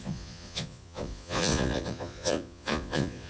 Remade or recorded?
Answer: remade